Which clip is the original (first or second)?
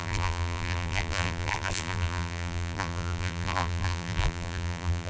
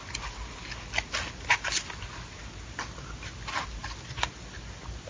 second